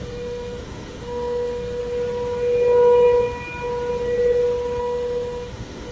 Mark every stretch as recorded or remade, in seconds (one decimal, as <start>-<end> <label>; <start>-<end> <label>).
0.0-1.8 remade; 1.8-4.8 recorded; 4.8-5.9 remade